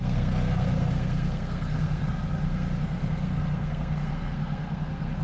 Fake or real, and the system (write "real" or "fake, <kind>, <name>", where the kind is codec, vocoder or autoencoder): fake, codec, SNAC